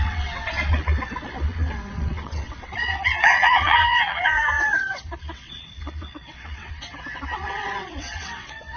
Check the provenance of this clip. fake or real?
fake